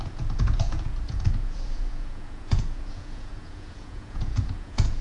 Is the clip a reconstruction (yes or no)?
yes